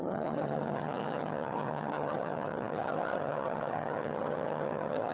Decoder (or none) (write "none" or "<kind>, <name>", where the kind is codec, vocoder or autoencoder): vocoder, HiFi-GAN